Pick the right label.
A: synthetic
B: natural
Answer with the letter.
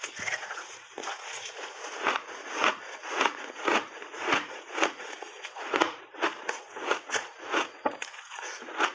A